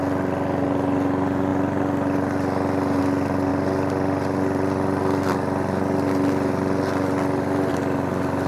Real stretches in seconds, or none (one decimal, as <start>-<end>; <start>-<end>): 0.0-8.5

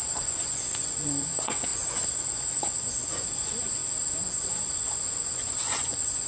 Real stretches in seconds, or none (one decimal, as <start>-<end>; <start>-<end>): none